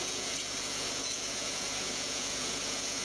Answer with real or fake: fake